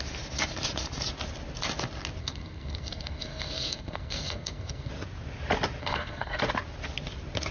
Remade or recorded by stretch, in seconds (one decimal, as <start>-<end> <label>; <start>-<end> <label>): 0.0-2.2 recorded; 2.2-4.9 remade; 4.9-5.8 recorded; 5.8-6.4 remade; 6.4-7.5 recorded